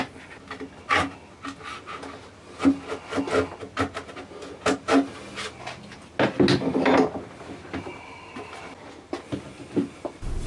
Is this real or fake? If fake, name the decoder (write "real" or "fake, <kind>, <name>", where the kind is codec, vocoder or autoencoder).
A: real